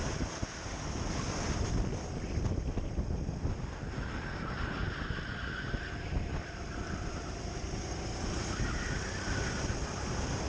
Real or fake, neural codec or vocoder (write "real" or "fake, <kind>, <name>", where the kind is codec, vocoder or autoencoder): real